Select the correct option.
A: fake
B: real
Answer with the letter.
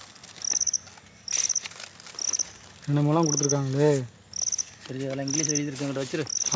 B